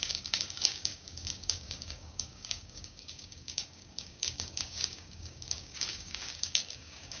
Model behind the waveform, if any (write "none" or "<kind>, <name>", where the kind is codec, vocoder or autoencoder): codec, DAC